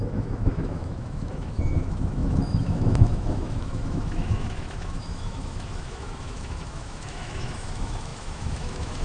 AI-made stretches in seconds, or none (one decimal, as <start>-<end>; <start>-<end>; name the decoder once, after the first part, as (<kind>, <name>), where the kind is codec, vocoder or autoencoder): 0.0-9.0 (autoencoder, DAC-VAE)

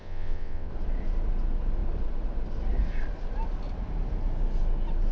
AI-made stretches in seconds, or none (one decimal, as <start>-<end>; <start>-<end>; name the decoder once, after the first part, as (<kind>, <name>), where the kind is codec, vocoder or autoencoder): 0.0-0.7 (vocoder, WaveNeXt)

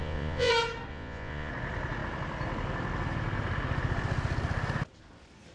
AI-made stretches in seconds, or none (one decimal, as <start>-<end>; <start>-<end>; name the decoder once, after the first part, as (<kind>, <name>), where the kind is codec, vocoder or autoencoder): 0.0-0.5 (vocoder, Vocos); 0.9-1.5